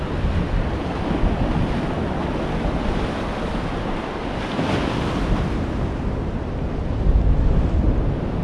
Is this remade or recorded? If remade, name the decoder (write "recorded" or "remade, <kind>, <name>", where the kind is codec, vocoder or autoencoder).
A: recorded